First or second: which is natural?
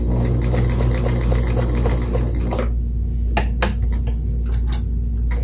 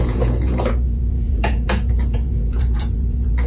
first